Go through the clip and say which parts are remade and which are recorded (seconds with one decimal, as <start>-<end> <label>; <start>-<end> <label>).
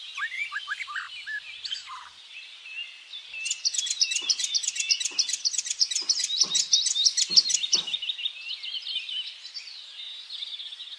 0.0-11.0 recorded